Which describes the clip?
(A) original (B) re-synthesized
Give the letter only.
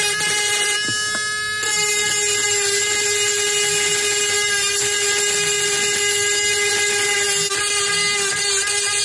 A